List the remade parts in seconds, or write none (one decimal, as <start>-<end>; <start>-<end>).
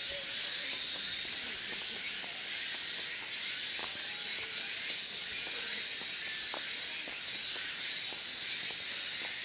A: none